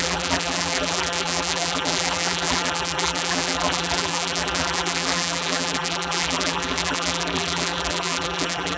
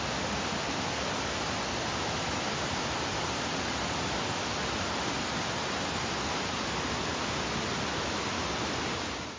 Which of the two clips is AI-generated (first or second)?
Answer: first